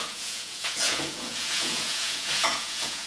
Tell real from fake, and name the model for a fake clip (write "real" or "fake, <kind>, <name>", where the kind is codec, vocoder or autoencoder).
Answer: fake, vocoder, Vocos